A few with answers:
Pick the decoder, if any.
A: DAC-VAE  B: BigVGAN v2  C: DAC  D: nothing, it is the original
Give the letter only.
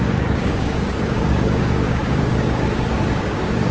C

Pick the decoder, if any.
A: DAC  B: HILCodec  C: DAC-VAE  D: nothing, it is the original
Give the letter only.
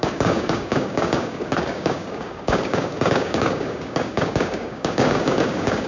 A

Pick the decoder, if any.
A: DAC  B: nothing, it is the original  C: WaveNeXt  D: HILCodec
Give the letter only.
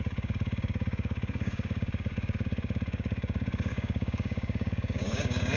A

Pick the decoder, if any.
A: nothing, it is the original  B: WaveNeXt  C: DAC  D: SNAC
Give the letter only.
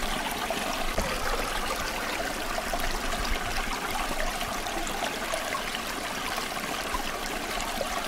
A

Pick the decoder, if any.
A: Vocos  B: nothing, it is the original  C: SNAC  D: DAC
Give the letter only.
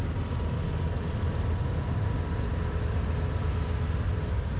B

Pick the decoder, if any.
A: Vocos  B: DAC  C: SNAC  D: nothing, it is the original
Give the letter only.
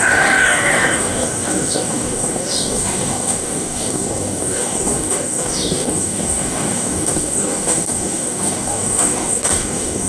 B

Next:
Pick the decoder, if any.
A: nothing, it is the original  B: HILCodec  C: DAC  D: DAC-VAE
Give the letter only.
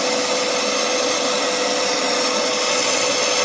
A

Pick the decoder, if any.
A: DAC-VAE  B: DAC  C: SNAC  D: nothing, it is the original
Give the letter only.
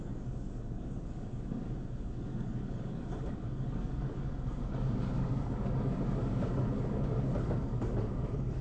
B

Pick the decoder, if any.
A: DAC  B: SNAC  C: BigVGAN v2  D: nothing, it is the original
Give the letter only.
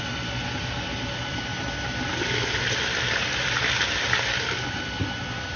D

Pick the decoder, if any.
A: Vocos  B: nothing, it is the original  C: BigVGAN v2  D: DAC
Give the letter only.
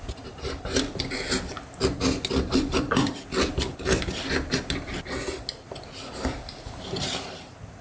B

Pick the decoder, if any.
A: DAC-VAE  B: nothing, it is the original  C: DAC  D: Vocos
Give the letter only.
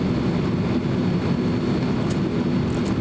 B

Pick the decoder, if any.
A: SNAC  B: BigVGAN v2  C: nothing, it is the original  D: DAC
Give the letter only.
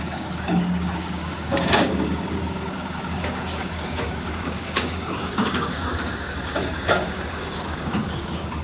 D